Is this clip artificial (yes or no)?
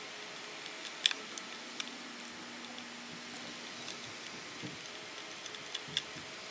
no